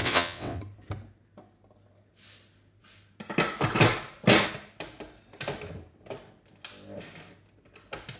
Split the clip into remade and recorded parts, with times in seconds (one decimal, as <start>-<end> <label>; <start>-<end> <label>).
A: 0.0-0.6 remade; 0.6-8.2 recorded